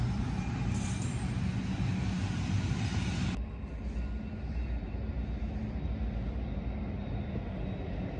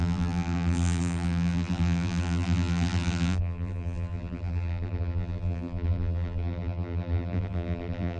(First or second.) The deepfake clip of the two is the second